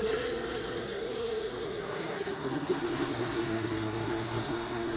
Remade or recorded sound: remade